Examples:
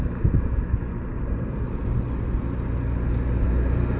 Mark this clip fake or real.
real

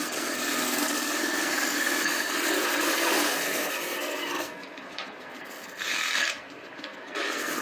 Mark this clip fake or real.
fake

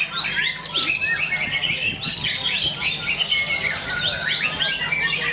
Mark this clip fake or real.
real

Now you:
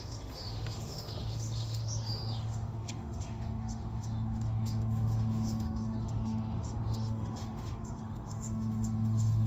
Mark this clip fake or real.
fake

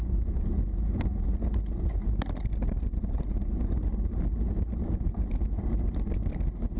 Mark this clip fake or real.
real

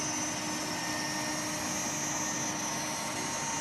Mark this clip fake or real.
real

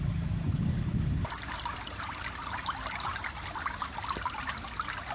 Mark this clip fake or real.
real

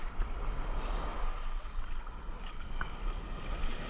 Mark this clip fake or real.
real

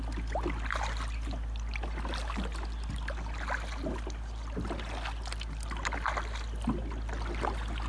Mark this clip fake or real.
real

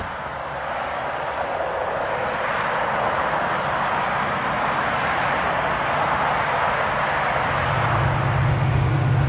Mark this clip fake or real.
real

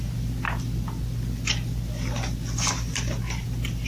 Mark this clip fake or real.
real